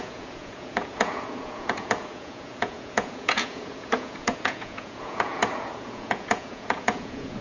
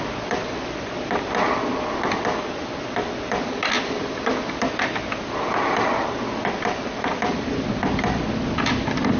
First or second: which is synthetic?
first